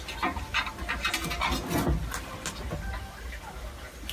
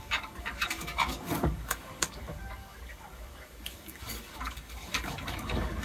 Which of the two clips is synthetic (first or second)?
second